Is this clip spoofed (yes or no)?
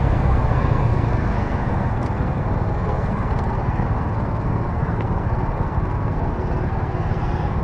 yes